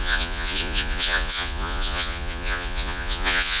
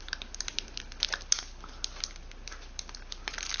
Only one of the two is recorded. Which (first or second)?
second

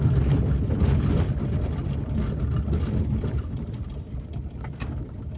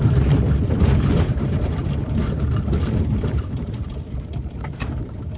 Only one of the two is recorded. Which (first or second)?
first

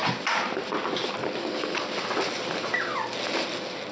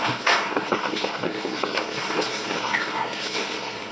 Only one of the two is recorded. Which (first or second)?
first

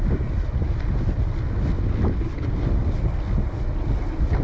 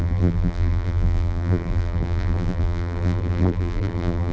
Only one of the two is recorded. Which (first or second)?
first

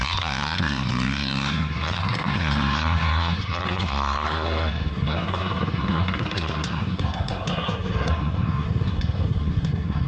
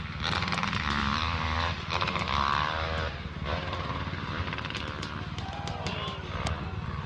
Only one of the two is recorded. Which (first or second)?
second